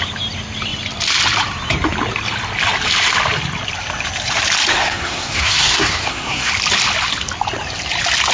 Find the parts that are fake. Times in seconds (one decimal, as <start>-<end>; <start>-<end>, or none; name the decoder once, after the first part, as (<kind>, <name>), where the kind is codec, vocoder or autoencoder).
4.7-6.5 (codec, SNAC)